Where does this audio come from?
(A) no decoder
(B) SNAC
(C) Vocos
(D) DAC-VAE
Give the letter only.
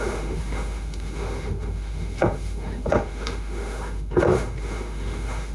D